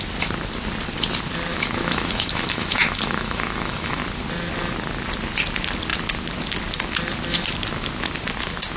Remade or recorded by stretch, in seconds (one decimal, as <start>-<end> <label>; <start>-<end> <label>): 0.0-1.5 recorded; 1.5-4.0 remade; 4.0-8.8 recorded